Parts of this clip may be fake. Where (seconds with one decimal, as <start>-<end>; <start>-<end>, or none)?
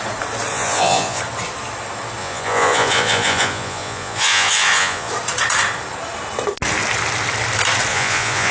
0.5-1.2; 2.2-5.1; 7.9-8.5